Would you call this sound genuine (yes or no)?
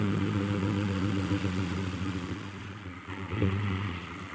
no